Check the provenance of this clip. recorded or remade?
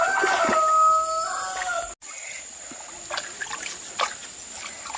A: recorded